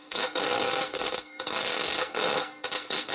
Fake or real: fake